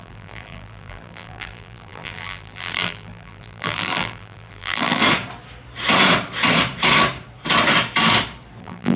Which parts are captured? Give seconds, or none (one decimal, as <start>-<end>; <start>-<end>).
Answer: 5.0-8.6